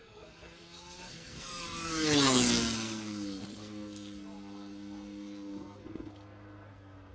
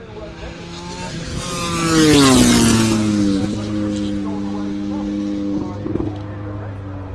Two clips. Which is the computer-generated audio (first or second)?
first